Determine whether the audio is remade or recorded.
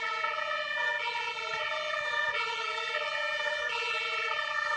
remade